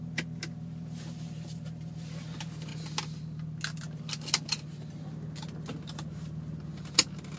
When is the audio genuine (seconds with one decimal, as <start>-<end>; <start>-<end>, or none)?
0.0-7.4